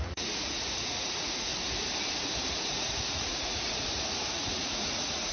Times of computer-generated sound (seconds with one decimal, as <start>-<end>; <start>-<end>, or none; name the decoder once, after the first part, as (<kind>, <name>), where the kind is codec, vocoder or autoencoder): 0.0-1.5 (vocoder, Vocos); 2.6-5.3